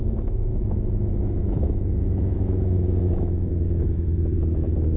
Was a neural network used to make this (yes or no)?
yes